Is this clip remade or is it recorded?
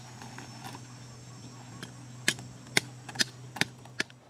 recorded